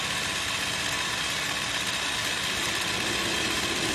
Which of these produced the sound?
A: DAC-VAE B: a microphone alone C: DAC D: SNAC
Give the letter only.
B